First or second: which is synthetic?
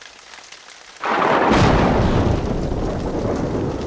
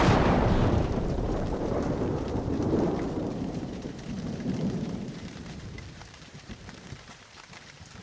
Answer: second